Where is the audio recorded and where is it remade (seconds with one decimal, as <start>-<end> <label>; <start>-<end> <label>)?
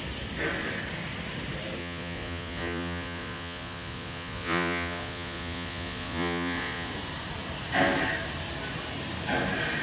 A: 0.0-1.8 recorded; 1.8-6.9 remade; 6.9-9.8 recorded